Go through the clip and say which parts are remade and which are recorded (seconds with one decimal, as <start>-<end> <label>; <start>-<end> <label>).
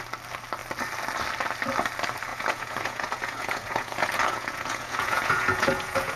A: 0.0-2.3 recorded; 2.3-6.2 remade